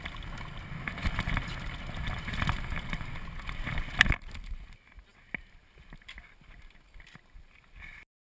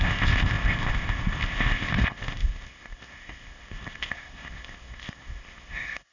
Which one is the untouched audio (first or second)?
first